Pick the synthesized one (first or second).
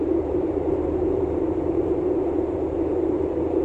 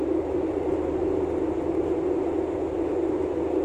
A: first